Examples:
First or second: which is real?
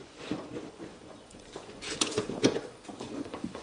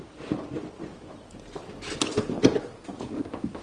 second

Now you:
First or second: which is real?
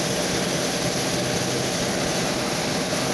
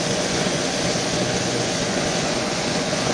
first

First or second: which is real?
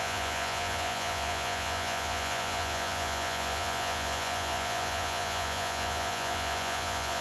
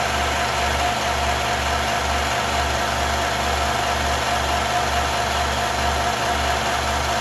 second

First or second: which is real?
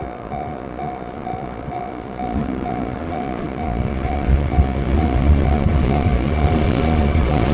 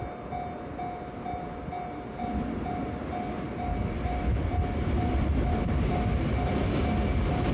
second